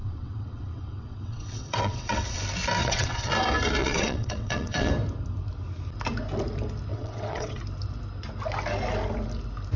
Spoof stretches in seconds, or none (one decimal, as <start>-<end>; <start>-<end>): 0.0-2.4; 2.8-3.3; 3.8-4.9; 6.9-7.6